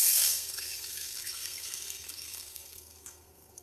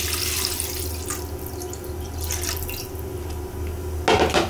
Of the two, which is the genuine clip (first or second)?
second